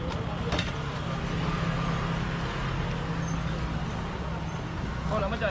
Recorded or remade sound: recorded